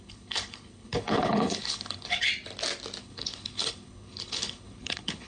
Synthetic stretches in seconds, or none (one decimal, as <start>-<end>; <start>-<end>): 0.0-2.3; 3.0-5.3